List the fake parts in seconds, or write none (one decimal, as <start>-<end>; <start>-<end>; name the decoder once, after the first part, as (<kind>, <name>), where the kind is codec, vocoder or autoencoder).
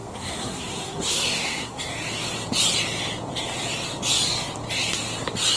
0.0-1.9 (codec, SNAC)